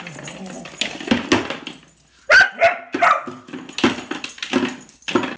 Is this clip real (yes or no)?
yes